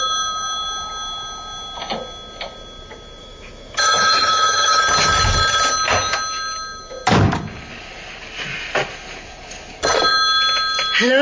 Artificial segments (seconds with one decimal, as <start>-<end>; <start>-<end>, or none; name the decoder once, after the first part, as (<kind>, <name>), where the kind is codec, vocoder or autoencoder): 3.2-4.8 (autoencoder, DAC-VAE)